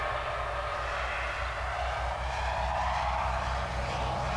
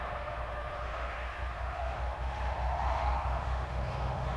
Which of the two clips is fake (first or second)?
second